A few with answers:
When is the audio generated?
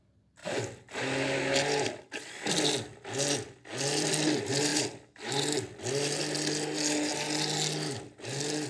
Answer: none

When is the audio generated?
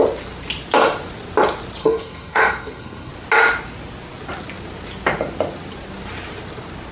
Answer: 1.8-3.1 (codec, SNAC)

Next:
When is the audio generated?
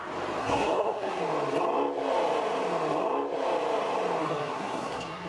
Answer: 0.4-1.2 (codec, SNAC); 4.2-5.3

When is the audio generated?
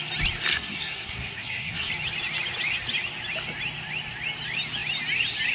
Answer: 0.5-1.9 (codec, SNAC)